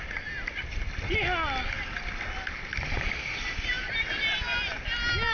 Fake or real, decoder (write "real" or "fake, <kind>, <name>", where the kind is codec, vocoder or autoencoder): real